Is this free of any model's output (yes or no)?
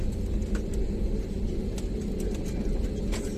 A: yes